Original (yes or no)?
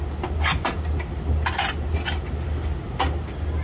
yes